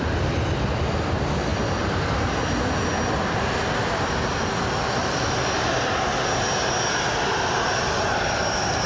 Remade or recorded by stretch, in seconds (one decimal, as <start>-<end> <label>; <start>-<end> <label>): 0.0-8.9 recorded